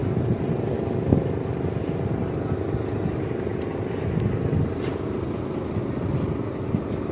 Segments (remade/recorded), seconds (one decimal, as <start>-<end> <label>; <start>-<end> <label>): 0.0-2.1 remade; 2.1-3.5 recorded; 3.5-6.1 remade; 6.1-7.1 recorded